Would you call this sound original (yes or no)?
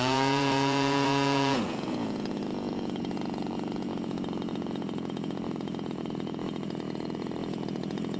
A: no